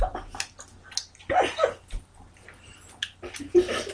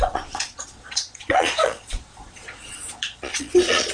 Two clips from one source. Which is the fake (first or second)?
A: second